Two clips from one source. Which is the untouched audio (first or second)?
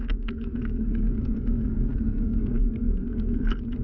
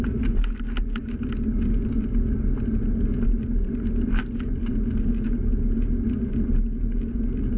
second